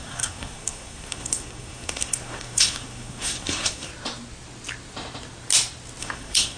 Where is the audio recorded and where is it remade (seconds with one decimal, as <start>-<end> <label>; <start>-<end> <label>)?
0.0-3.9 remade; 3.9-6.0 recorded; 6.0-6.6 remade